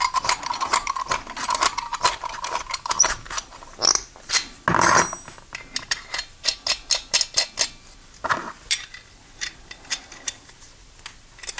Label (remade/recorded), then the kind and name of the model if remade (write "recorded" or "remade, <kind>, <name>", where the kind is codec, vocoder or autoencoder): recorded